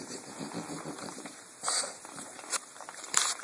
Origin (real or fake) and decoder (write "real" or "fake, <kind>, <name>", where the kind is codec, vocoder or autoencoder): fake, vocoder, BigVGAN v2